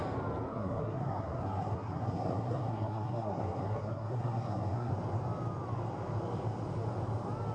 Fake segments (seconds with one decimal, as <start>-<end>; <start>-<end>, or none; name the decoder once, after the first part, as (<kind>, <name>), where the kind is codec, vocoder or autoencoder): 0.5-4.9 (codec, SNAC)